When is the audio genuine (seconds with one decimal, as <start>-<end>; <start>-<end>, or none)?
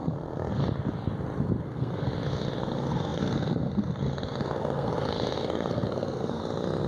0.6-1.6; 2.1-2.6; 6.4-6.9